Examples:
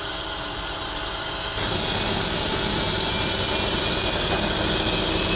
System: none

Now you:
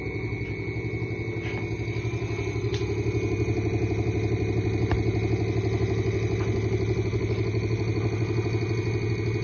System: none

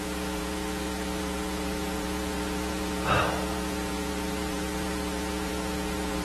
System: vocoder, Vocos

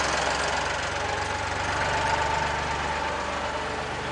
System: none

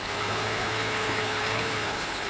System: codec, HILCodec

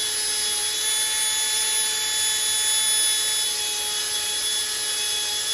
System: none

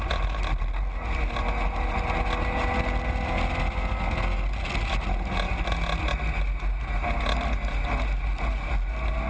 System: none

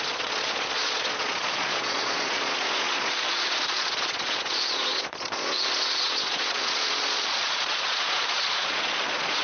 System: vocoder, Vocos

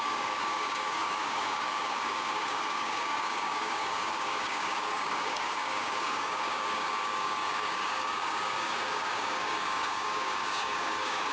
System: codec, DAC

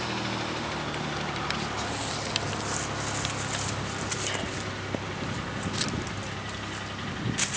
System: none